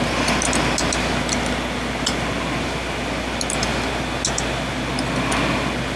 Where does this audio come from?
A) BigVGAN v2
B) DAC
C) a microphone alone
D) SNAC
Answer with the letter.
C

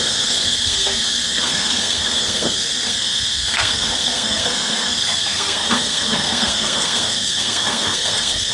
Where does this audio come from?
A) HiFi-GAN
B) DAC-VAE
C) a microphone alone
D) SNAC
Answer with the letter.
D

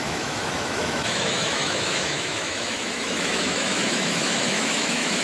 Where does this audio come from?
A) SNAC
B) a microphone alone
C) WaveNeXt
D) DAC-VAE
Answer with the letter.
D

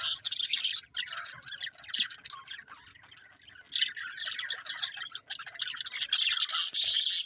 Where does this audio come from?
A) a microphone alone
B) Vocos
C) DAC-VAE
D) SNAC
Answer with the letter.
A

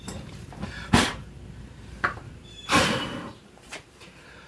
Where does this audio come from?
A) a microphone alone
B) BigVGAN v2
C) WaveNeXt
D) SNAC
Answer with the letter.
B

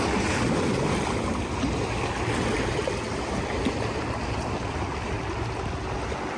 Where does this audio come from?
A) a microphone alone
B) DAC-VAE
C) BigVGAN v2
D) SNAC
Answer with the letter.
A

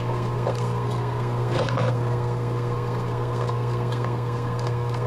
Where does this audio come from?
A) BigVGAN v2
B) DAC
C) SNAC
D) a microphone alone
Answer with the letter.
C